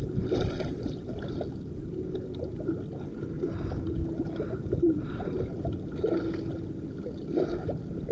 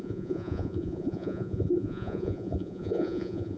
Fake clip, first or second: second